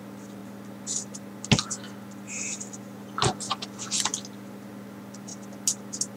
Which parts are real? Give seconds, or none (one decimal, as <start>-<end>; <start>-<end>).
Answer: 0.0-6.2